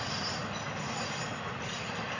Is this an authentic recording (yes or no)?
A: yes